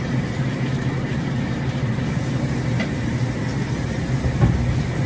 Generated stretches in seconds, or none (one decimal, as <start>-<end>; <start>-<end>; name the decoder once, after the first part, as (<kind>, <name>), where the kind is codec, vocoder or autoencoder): none